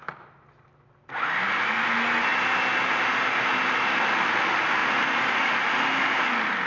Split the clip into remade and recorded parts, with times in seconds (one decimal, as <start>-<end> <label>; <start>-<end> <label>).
0.0-6.7 recorded